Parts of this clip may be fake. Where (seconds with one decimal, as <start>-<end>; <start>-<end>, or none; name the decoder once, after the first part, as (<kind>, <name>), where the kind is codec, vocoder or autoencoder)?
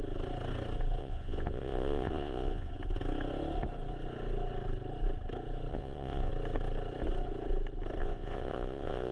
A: 1.0-2.7 (vocoder, Vocos); 5.7-6.3; 8.0-9.1